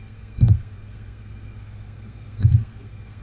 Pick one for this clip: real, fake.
fake